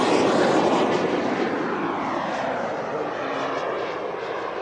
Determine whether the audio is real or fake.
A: real